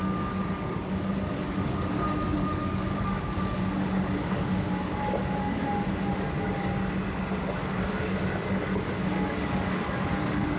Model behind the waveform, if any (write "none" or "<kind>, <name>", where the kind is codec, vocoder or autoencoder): codec, DAC